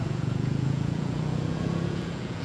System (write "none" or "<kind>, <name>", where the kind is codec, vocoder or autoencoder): vocoder, Vocos